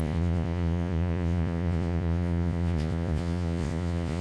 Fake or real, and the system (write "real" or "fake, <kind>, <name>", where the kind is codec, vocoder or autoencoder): fake, vocoder, Vocos